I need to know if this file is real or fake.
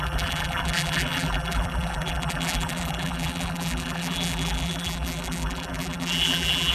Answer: fake